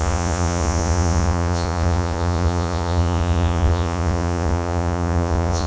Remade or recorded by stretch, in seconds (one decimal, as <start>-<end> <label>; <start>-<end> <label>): 0.0-5.7 remade